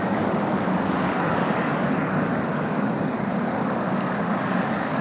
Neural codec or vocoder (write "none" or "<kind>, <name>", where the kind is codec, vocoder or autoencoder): codec, DAC